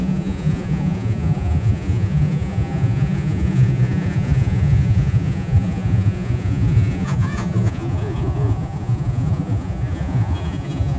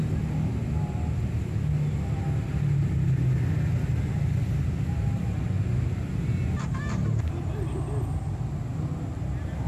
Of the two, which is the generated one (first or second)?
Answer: first